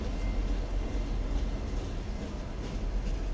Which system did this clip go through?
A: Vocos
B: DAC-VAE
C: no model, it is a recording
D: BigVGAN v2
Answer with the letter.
C